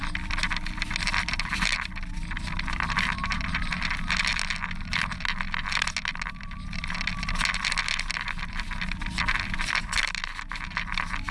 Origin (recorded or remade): recorded